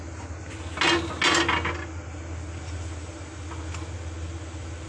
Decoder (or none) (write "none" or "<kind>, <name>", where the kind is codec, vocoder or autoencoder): none